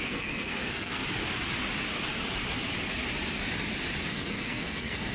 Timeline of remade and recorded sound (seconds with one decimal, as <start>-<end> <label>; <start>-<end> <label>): 0.0-1.0 remade; 1.0-4.1 recorded; 4.1-5.1 remade